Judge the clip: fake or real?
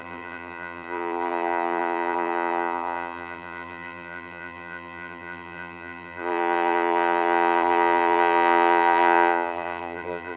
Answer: fake